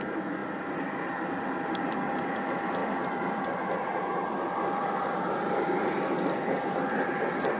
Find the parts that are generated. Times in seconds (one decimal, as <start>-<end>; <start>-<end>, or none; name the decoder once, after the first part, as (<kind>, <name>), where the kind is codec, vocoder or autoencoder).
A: none